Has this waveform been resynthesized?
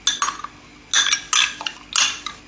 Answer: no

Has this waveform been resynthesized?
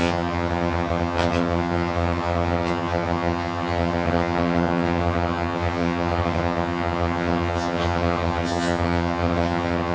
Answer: yes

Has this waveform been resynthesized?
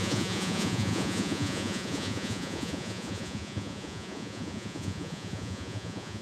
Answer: yes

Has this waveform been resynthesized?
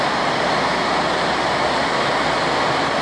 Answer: no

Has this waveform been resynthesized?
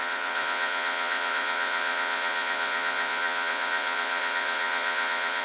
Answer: yes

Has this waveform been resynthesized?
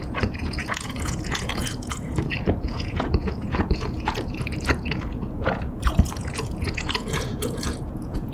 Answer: yes